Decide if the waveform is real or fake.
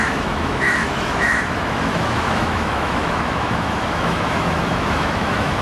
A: fake